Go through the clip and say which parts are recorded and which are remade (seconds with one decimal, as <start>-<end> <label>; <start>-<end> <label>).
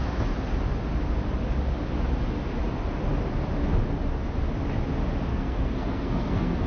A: 0.0-5.3 recorded; 5.3-6.7 remade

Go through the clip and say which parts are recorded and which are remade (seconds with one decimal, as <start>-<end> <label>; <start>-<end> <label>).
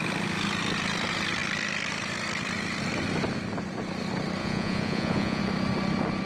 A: 0.0-4.4 recorded; 4.4-5.4 remade; 5.4-6.3 recorded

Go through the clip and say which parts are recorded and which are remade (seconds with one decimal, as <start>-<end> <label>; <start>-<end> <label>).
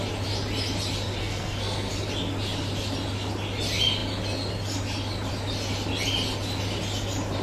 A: 0.0-1.2 recorded; 1.2-1.9 remade; 1.9-7.4 recorded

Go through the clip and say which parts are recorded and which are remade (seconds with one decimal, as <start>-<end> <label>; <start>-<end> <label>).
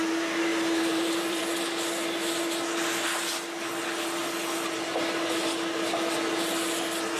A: 0.0-0.5 recorded; 0.5-1.4 remade; 1.4-7.2 recorded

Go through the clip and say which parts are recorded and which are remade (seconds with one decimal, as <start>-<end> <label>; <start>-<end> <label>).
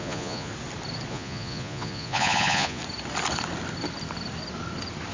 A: 0.0-0.5 remade; 0.5-1.1 recorded; 1.1-2.8 remade; 2.8-5.1 recorded